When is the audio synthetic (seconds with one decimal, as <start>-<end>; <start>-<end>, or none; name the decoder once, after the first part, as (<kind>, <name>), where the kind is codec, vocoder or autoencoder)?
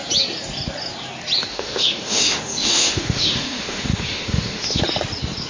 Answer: 1.5-4.8 (autoencoder, DAC-VAE)